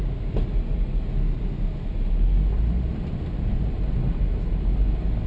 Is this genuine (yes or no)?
yes